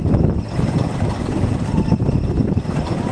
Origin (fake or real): fake